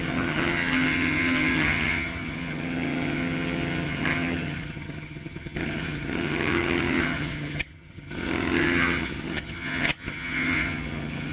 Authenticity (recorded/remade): remade